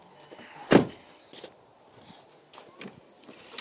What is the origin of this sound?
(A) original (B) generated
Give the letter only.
A